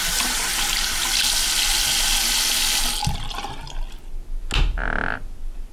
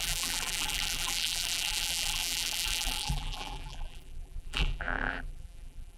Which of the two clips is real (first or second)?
first